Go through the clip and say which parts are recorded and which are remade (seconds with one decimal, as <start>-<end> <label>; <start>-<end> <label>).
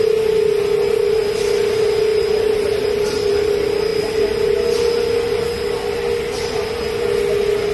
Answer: 0.0-2.1 recorded; 2.1-3.5 remade; 3.5-7.7 recorded